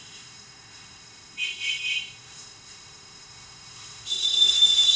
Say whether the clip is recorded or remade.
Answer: remade